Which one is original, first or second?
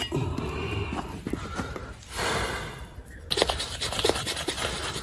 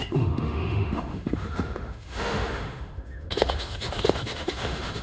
first